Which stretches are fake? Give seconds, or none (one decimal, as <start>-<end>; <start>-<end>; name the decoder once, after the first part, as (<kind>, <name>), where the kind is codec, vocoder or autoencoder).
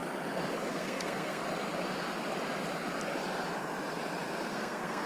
0.7-1.4 (codec, SNAC); 4.5-5.1